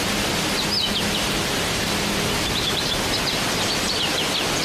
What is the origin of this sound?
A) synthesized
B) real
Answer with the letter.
B